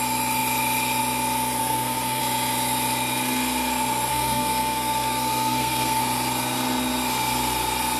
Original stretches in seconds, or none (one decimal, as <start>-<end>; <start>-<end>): 0.0-1.6; 2.2-4.1; 6.0-8.0